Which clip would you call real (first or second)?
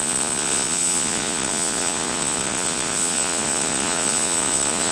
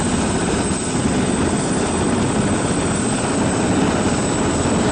second